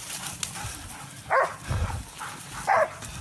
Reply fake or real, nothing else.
real